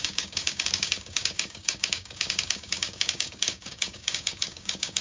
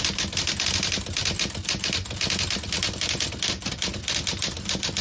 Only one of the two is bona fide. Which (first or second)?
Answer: second